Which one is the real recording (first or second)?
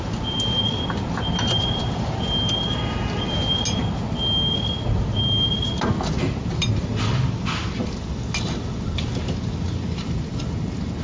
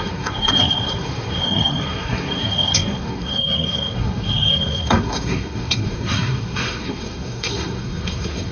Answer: first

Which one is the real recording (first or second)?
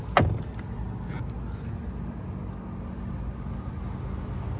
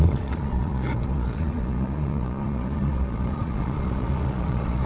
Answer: first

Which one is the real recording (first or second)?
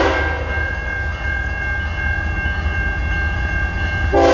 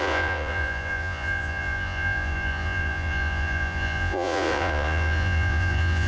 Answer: first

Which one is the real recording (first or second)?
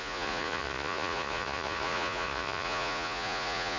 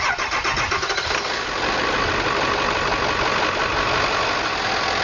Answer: second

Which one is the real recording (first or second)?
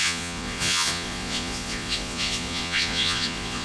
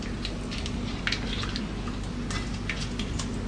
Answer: second